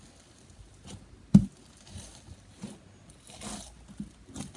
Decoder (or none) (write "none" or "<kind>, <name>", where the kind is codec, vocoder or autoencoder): none